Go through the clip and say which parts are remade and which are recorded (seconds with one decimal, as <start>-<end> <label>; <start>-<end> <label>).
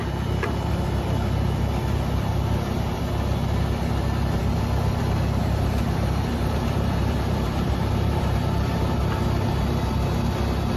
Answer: 0.0-5.4 recorded; 5.4-9.0 remade; 9.0-10.8 recorded